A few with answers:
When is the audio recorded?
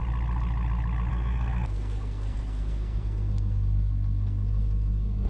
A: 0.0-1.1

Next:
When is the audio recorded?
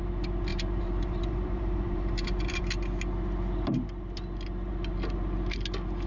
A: 0.0-0.5; 2.6-6.1